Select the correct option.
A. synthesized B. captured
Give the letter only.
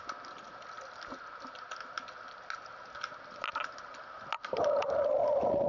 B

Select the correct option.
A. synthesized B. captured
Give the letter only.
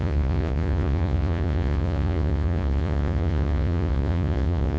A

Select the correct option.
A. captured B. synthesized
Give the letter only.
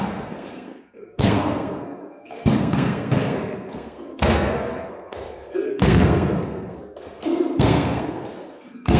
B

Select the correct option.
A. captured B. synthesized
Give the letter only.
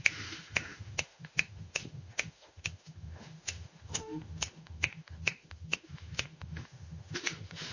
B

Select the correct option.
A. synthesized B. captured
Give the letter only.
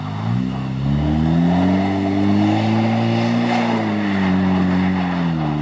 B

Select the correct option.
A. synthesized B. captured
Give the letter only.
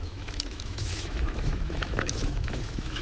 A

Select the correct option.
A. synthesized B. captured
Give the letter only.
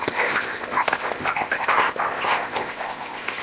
A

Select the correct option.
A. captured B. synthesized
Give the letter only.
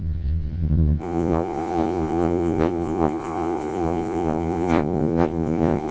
B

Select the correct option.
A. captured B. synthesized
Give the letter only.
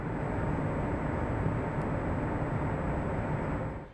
A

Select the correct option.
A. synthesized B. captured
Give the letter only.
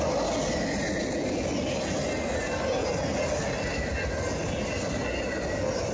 B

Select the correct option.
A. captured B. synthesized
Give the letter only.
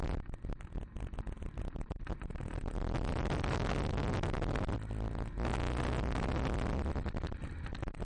A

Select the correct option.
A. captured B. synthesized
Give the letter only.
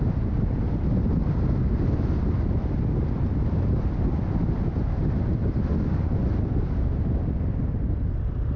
A